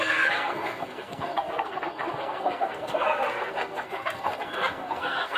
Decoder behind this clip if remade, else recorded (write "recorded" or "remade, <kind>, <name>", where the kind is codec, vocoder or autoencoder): remade, codec, SNAC